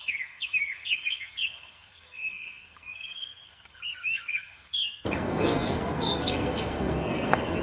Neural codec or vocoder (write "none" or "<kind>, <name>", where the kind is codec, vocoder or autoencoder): codec, SNAC